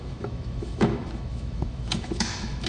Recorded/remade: remade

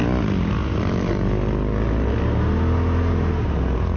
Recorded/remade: recorded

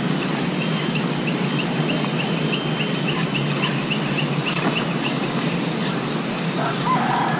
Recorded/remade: recorded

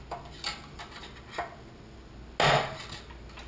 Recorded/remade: recorded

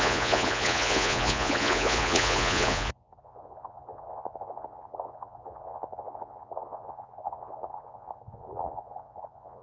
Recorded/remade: remade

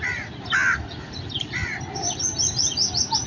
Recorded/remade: recorded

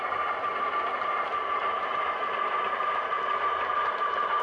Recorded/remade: remade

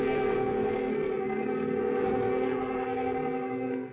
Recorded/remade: remade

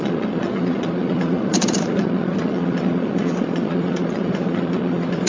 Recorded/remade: remade